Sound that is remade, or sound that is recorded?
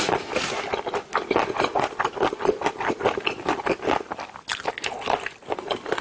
recorded